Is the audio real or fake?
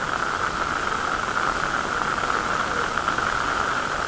real